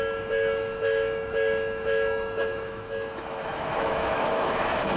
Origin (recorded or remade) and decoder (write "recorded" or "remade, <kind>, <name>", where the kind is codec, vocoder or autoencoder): remade, autoencoder, DAC-VAE